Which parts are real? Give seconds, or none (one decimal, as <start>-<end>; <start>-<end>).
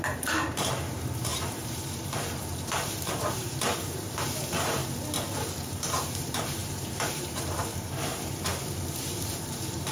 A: 4.8-5.4; 8.5-9.3